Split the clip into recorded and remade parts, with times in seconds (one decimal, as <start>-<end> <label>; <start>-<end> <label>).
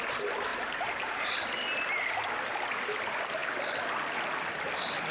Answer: 0.0-5.1 recorded